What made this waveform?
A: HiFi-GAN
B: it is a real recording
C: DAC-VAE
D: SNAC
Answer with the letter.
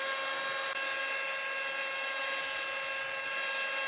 B